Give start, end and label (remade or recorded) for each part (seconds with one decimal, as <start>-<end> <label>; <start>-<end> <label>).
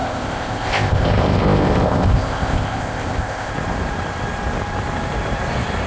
0.0-3.5 remade; 3.5-5.9 recorded